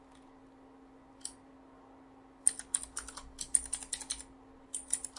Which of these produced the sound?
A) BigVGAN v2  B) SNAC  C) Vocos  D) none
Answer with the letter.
D